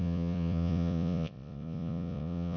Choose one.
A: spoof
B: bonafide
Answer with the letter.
A